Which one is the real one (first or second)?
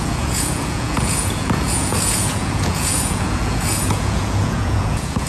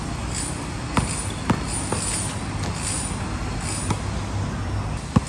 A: second